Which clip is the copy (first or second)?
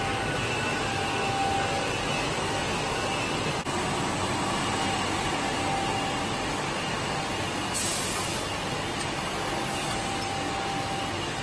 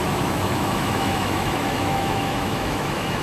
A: second